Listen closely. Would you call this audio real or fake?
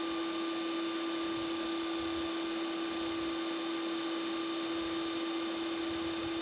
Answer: real